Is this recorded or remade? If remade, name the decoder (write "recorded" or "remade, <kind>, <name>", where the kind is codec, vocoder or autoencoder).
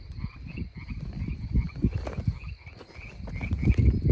recorded